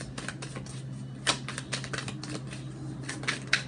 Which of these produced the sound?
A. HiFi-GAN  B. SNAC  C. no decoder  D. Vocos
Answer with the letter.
C